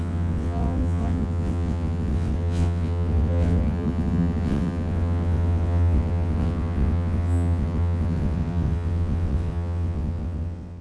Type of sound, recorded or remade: remade